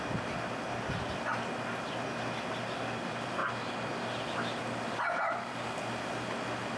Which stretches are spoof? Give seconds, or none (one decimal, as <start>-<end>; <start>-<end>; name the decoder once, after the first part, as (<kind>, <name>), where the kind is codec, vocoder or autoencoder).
none

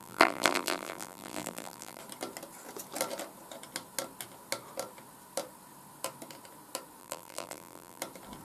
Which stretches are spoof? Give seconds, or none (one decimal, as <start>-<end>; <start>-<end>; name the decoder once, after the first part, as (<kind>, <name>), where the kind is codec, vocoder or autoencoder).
0.0-2.0 (vocoder, BigVGAN v2); 7.0-8.0

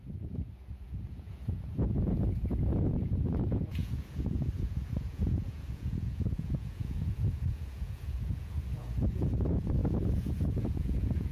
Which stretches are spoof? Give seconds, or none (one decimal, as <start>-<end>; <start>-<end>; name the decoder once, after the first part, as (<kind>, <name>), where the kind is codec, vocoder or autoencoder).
0.0-11.3 (vocoder, Vocos)